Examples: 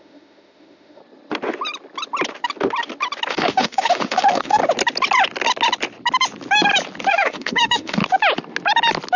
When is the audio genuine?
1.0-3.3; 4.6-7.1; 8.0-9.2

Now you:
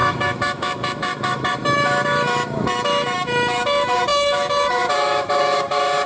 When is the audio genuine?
none

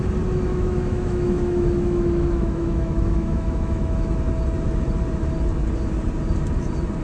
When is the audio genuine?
0.0-0.5; 4.2-7.0

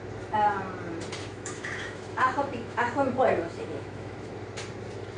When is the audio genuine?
0.0-1.2; 4.3-5.2

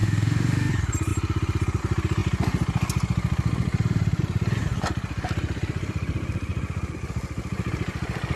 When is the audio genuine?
0.7-8.4

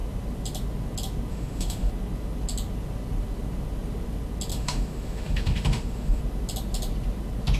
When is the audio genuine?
0.0-1.3; 1.9-4.5; 6.2-7.6